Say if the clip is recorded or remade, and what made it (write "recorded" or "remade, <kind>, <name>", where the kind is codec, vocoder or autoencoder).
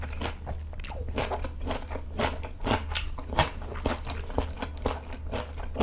recorded